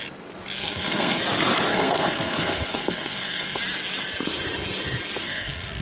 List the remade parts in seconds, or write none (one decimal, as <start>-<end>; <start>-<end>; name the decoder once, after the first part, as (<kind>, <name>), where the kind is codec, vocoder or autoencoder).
0.6-1.2 (codec, SNAC); 1.7-3.6; 5.2-5.8